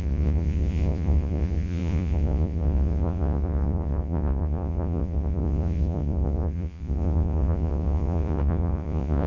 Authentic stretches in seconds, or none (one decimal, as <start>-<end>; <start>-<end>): none